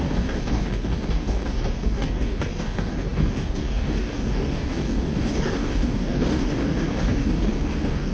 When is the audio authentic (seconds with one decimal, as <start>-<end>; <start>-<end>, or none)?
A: none